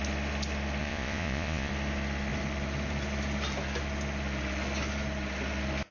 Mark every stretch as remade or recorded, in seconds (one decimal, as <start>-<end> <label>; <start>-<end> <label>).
0.0-0.8 recorded; 0.8-1.7 remade; 1.7-5.9 recorded